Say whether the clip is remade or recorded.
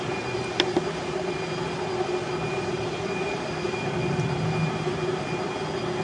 recorded